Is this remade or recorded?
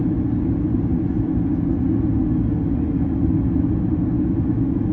recorded